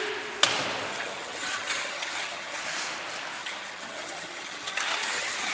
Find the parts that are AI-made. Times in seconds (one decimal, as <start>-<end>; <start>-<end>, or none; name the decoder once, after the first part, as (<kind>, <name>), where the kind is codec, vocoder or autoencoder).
0.9-2.6 (vocoder, HiFi-GAN); 3.4-5.5